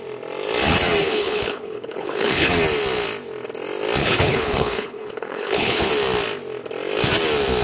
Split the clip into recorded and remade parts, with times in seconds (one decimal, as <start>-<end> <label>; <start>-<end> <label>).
0.0-1.0 recorded; 1.0-2.5 remade; 2.5-4.0 recorded; 4.0-5.9 remade; 5.9-7.6 recorded